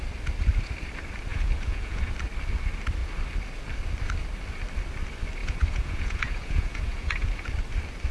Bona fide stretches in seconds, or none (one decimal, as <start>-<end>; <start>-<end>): 0.0-1.3; 2.1-5.4; 7.5-8.1